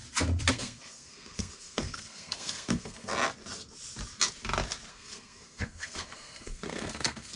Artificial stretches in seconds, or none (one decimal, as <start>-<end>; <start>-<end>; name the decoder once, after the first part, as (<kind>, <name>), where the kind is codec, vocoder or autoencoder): 0.5-3.1 (codec, SNAC); 4.9-7.4